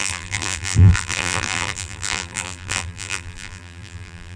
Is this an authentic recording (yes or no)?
no